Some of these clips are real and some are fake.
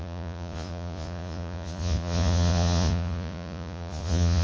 fake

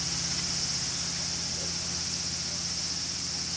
real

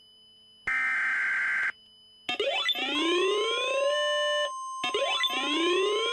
real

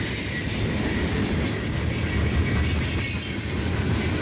real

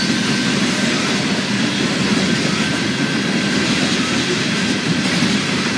real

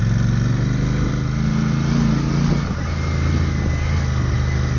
real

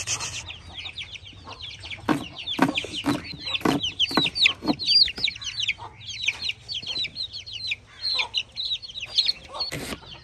real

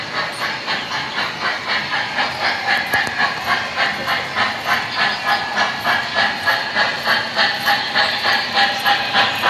real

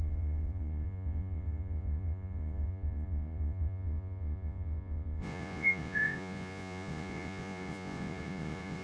fake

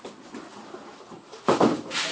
real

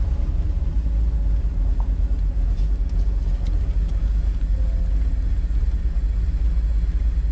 real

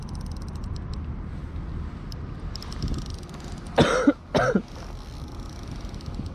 real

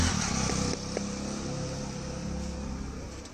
real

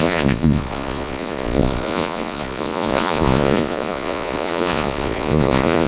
fake